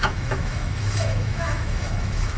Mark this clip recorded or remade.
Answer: remade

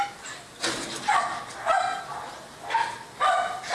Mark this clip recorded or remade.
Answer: recorded